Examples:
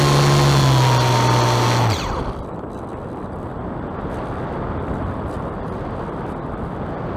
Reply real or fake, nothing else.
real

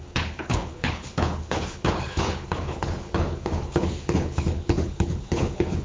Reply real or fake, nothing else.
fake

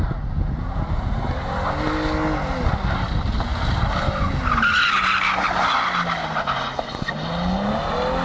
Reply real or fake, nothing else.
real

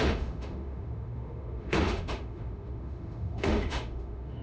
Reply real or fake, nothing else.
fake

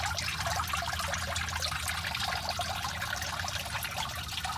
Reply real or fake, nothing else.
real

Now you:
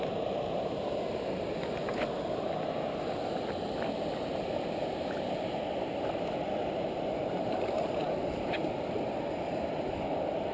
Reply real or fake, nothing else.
real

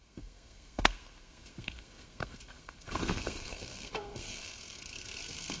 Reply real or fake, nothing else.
fake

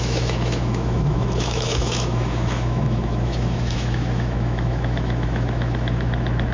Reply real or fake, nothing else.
fake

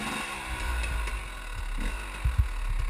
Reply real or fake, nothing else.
real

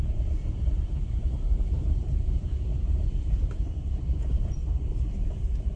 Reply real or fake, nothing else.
fake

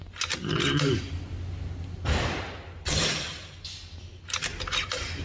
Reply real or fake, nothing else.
real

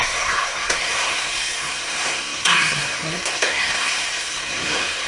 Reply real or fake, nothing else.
fake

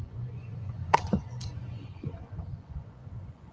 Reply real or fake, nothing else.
fake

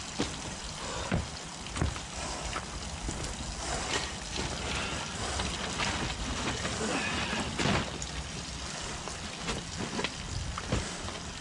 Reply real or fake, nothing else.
real